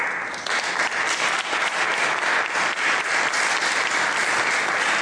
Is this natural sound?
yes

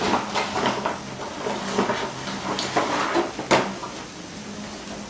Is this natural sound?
yes